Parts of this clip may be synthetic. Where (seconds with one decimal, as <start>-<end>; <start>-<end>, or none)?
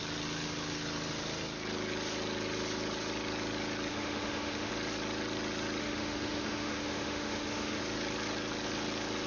3.9-4.7; 5.8-7.8